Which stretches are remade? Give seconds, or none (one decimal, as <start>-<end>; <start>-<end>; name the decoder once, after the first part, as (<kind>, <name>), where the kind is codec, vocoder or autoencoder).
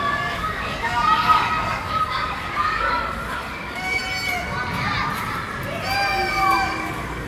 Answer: 0.0-4.0 (codec, DAC); 6.3-7.3